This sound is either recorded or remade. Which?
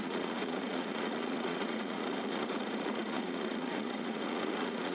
remade